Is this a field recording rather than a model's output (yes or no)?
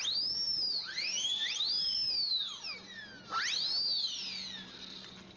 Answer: yes